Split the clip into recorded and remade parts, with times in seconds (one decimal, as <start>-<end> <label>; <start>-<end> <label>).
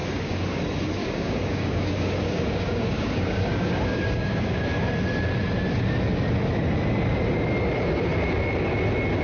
0.0-0.6 remade; 0.6-1.0 recorded; 1.0-4.6 remade; 4.6-9.2 recorded